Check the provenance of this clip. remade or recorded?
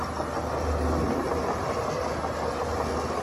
recorded